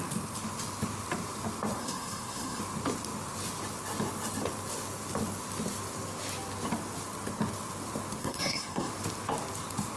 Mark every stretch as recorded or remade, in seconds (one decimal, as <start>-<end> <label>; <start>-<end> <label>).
0.0-1.8 recorded; 1.8-2.6 remade; 2.6-8.2 recorded; 8.2-8.9 remade; 8.9-10.0 recorded